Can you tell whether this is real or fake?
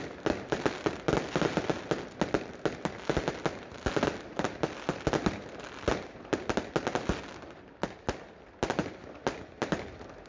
real